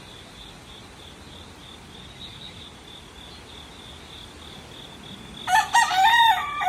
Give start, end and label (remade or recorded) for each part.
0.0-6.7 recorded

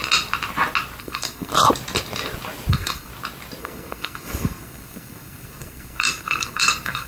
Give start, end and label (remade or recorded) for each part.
0.0-1.0 recorded; 1.0-1.5 remade; 1.5-2.7 recorded; 2.7-3.1 remade; 3.1-3.6 recorded; 3.6-7.1 remade

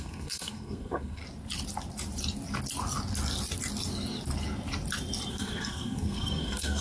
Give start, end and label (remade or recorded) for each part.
0.0-1.2 remade; 1.2-5.3 recorded; 5.3-6.8 remade

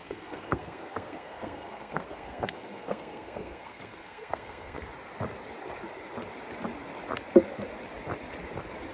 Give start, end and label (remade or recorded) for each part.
0.0-4.9 remade; 4.9-8.9 recorded

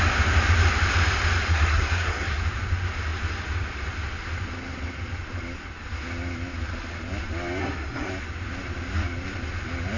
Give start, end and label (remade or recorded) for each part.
0.0-1.5 recorded; 1.5-2.4 remade; 2.4-7.6 recorded; 7.6-8.1 remade; 8.1-10.0 recorded

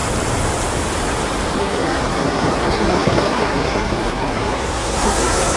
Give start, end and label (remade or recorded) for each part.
0.0-1.6 recorded; 1.6-5.6 remade

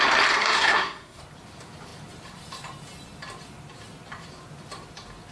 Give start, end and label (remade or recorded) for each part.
0.0-0.4 recorded; 0.4-1.2 remade; 1.2-5.3 recorded

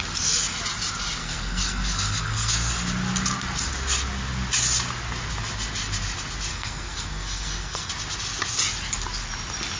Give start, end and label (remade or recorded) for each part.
0.0-1.2 recorded; 1.2-2.7 remade; 2.7-6.5 recorded; 6.5-7.9 remade; 7.9-9.8 recorded